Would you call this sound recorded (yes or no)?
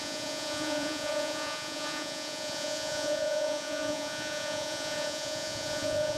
no